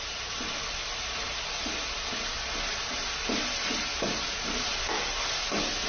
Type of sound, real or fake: real